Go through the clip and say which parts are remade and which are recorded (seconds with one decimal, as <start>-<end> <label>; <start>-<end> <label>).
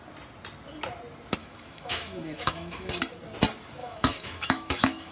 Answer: 0.0-1.4 recorded; 1.4-2.9 remade; 2.9-3.8 recorded; 3.8-5.1 remade